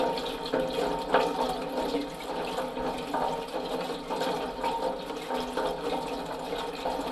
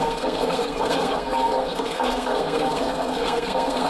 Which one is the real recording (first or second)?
first